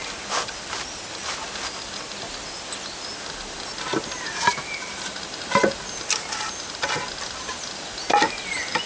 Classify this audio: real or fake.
real